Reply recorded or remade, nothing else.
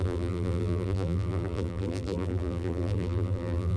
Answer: remade